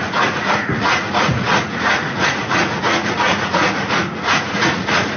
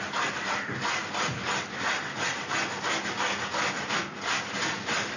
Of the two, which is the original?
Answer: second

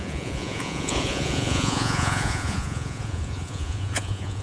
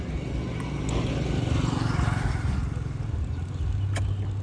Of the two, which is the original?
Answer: second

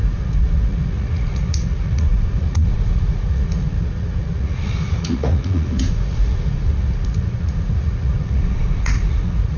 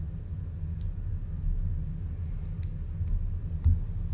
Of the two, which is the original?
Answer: second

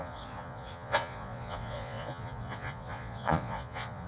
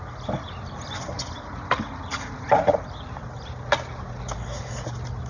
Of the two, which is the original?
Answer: second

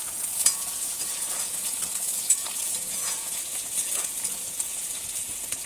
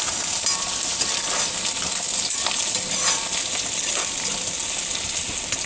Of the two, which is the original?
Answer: second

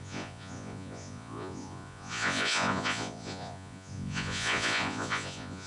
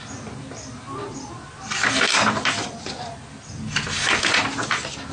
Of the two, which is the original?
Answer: second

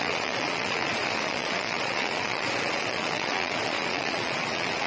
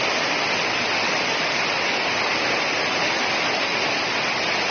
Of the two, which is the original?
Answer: second